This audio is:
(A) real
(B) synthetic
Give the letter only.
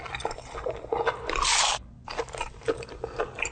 A